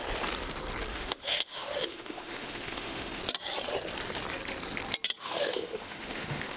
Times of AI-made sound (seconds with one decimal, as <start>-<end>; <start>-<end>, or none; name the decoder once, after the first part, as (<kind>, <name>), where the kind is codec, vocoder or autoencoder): 0.9-3.2 (autoencoder, DAC-VAE); 5.2-6.6